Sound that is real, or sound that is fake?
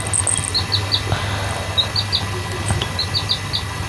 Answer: real